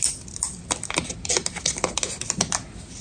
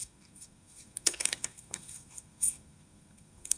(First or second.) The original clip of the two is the first